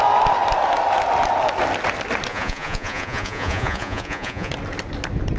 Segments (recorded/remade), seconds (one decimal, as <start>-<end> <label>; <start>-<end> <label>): 0.0-2.3 recorded; 2.3-4.5 remade; 4.5-5.4 recorded